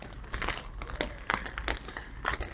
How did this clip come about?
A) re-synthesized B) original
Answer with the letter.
B